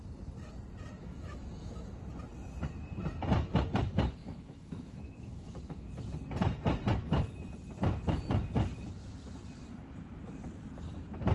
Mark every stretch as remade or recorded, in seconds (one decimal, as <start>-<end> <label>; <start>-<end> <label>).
0.0-1.0 recorded; 1.0-2.0 remade; 2.0-4.2 recorded; 4.2-5.9 remade; 5.9-11.3 recorded